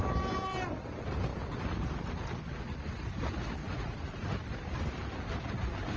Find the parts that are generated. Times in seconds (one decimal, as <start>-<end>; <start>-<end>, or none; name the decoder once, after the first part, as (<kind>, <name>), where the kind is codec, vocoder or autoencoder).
1.3-2.1 (vocoder, BigVGAN v2); 3.6-5.0